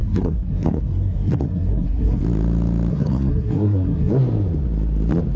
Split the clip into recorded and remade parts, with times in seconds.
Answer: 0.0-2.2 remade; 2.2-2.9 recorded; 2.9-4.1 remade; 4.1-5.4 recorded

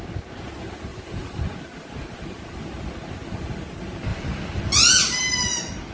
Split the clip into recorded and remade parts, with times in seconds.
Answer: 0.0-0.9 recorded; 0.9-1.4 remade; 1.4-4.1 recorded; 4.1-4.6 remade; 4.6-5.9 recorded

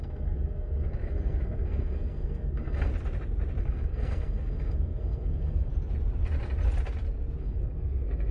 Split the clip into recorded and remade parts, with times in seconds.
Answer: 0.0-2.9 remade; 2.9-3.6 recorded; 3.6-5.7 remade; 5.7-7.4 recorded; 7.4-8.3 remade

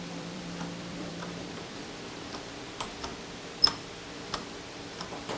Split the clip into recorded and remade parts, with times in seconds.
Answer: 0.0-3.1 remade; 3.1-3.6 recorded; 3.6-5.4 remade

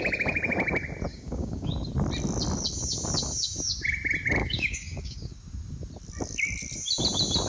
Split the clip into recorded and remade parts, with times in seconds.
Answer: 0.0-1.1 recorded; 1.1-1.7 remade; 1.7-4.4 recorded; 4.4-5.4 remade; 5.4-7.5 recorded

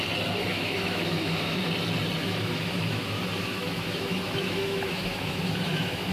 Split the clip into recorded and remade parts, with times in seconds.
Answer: 0.0-0.4 recorded; 0.4-1.6 remade; 1.6-2.2 recorded; 2.2-6.1 remade